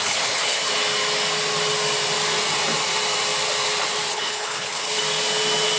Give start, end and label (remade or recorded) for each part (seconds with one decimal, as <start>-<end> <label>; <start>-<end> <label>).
0.0-0.7 remade; 0.7-4.1 recorded; 4.1-5.0 remade; 5.0-5.8 recorded

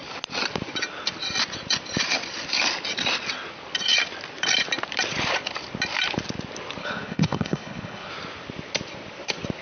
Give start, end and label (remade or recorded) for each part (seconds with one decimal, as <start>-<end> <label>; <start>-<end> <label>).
0.0-6.8 recorded; 6.8-8.1 remade; 8.1-9.6 recorded

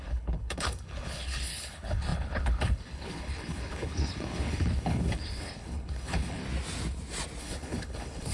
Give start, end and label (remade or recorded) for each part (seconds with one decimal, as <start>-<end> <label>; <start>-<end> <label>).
0.0-6.4 remade; 6.4-7.4 recorded; 7.4-8.3 remade

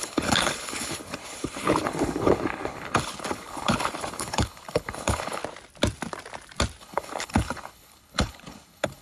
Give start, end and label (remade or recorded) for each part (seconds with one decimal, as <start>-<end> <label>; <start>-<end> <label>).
0.0-5.4 remade; 5.4-6.8 recorded; 6.8-9.0 remade

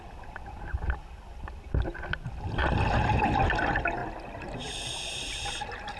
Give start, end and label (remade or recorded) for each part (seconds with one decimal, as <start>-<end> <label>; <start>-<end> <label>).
0.0-6.0 recorded

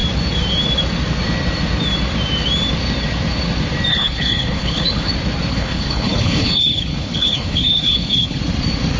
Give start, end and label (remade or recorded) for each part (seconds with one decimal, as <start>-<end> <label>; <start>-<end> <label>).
0.0-3.9 recorded; 3.9-5.1 remade; 5.1-5.5 recorded; 5.5-8.4 remade; 8.4-9.0 recorded